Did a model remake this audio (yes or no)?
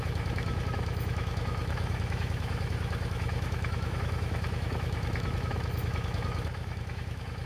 yes